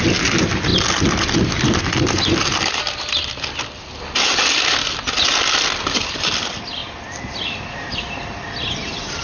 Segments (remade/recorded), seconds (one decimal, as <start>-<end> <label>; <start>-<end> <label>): 0.0-9.2 recorded